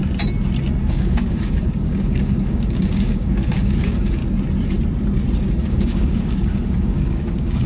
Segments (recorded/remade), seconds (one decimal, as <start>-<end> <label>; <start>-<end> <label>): 0.0-0.9 recorded; 0.9-4.2 remade; 4.2-5.6 recorded; 5.6-7.7 remade